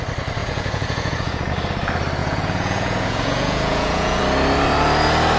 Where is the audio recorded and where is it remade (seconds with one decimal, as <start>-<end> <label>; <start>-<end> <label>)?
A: 0.0-0.4 recorded; 0.4-1.5 remade; 1.5-2.2 recorded; 2.2-4.2 remade; 4.2-5.4 recorded